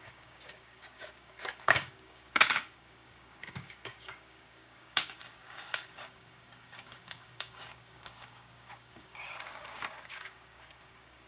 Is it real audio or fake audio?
fake